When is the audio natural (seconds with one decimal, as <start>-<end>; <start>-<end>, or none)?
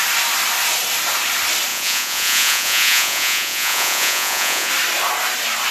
0.0-1.7; 4.7-5.7